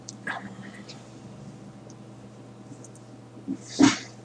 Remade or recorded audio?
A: recorded